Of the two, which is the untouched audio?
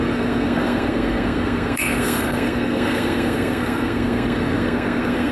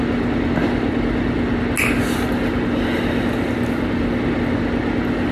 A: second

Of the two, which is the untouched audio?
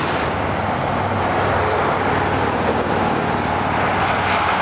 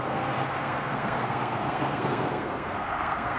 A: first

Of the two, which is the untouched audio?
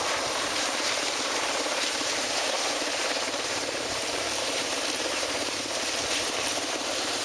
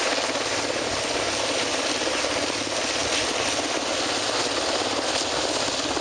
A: second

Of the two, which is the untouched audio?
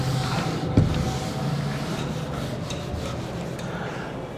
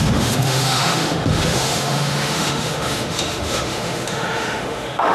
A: first